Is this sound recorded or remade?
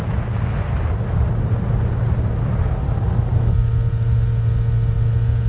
recorded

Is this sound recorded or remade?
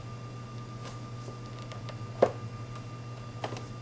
recorded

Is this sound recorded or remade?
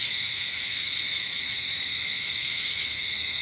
remade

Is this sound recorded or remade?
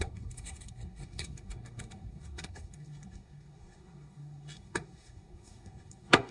remade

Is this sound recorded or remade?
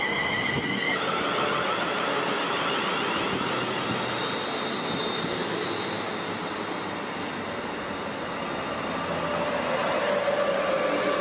recorded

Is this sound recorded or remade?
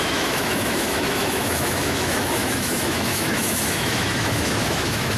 remade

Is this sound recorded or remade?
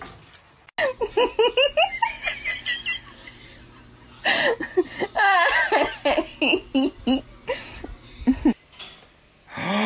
recorded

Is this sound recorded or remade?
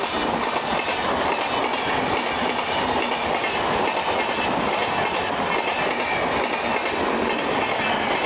recorded